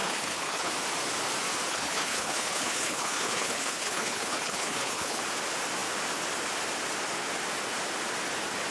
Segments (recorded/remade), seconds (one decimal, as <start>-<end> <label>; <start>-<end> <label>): 0.0-0.7 remade; 0.7-1.7 recorded; 1.7-5.2 remade; 5.2-8.7 recorded